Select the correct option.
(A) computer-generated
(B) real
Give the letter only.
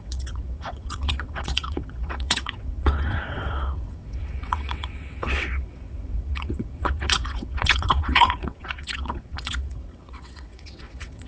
A